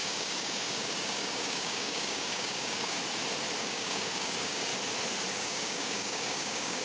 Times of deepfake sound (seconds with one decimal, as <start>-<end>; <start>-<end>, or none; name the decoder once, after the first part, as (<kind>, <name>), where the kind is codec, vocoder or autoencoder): 0.0-3.0 (codec, DAC); 3.6-4.7; 5.3-6.8